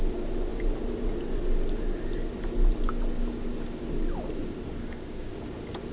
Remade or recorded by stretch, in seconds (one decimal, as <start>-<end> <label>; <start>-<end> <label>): 0.0-4.8 recorded; 4.8-5.3 remade; 5.3-5.9 recorded